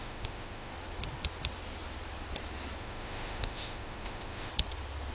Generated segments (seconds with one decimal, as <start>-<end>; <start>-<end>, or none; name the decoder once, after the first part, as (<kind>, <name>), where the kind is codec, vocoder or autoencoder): 0.0-0.7 (autoencoder, DAC-VAE); 2.8-4.5